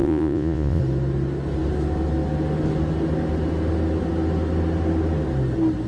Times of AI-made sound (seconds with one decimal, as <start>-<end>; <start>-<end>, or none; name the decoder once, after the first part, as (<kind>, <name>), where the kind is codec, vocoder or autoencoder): 0.0-0.8 (vocoder, Vocos)